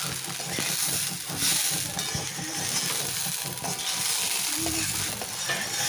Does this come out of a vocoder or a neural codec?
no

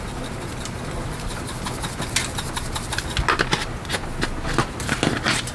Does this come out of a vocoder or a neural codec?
no